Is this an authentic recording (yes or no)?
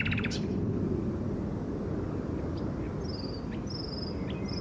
yes